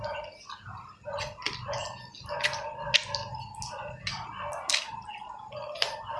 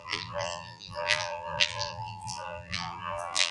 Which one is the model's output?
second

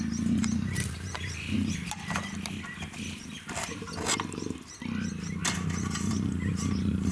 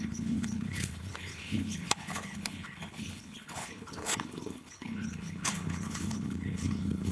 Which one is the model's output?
second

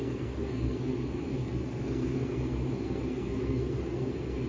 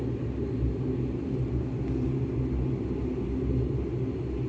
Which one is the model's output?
first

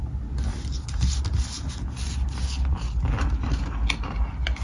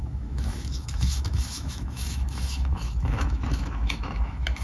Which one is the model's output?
second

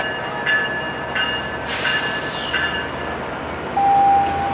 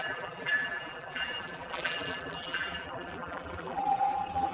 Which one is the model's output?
second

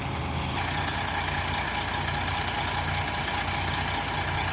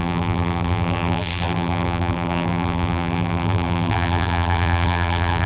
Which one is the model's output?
second